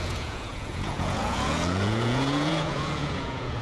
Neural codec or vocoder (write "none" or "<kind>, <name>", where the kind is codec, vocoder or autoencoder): vocoder, Vocos